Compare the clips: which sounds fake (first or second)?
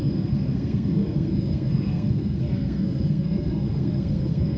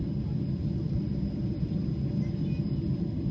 first